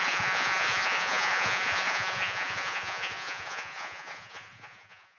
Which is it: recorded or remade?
remade